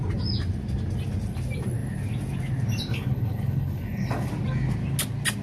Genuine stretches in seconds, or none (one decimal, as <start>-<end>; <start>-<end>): 0.0-2.9; 4.3-5.4